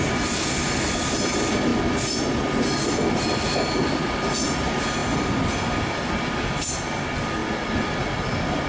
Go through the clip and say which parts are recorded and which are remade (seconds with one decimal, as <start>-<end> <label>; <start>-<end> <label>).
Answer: 0.0-8.7 recorded